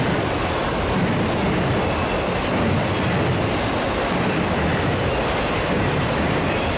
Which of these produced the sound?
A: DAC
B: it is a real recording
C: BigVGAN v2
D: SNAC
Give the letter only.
B